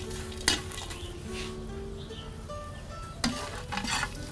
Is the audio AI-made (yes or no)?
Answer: no